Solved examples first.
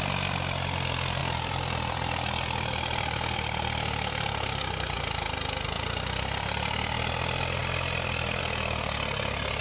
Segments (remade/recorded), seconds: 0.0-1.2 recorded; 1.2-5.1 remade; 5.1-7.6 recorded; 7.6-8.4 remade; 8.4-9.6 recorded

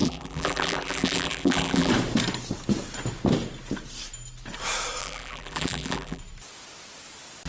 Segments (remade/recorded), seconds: 0.0-1.9 remade; 1.9-5.0 recorded; 5.0-6.2 remade; 6.2-7.5 recorded

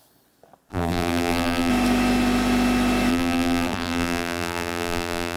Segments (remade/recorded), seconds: 0.0-0.7 recorded; 0.7-1.7 remade; 1.7-3.1 recorded; 3.1-5.4 remade

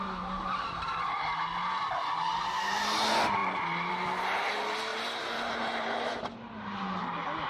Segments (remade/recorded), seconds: 0.0-4.9 recorded; 4.9-6.2 remade; 6.2-7.5 recorded

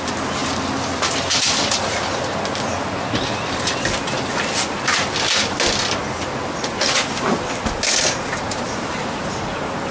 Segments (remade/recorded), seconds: 0.0-9.9 recorded

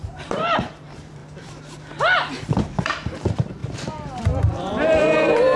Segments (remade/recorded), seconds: 0.0-1.2 remade; 1.2-2.8 recorded; 2.8-5.6 remade

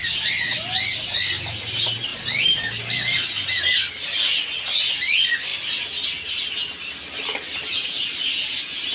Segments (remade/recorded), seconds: 0.0-8.9 recorded